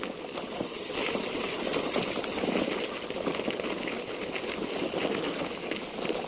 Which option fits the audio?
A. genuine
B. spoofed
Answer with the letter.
A